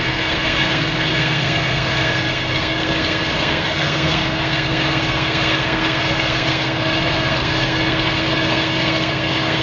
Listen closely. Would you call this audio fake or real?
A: fake